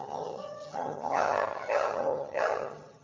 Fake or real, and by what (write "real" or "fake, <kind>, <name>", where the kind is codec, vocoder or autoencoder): fake, vocoder, HiFi-GAN